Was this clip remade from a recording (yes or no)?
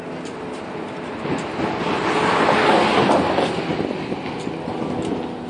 no